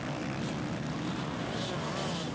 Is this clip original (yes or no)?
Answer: yes